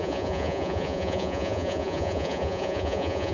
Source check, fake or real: fake